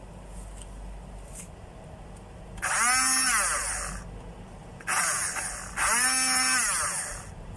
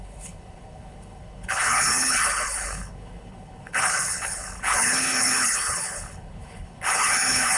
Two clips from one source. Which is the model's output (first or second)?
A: second